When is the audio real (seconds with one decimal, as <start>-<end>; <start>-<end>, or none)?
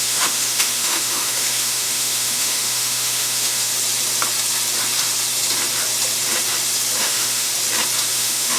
3.7-7.0; 7.5-8.1